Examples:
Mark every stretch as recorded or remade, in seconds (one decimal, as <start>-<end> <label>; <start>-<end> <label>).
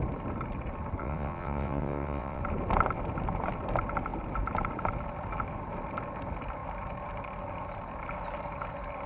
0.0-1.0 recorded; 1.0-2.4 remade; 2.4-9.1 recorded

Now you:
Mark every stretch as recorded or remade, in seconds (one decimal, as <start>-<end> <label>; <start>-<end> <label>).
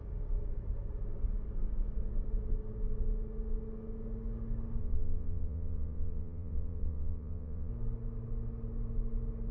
0.0-4.8 recorded; 4.8-7.7 remade; 7.7-9.5 recorded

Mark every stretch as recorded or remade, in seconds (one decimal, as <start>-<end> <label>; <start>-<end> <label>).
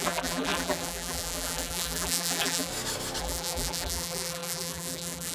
0.0-2.7 remade; 2.7-3.2 recorded; 3.2-5.3 remade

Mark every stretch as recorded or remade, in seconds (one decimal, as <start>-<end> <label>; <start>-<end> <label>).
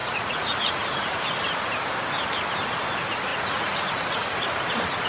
0.0-1.2 remade; 1.2-3.3 recorded; 3.3-4.6 remade; 4.6-5.1 recorded